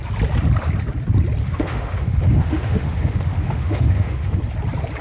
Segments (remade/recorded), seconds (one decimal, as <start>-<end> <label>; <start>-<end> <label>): 0.0-1.4 recorded; 1.4-4.4 remade; 4.4-5.0 recorded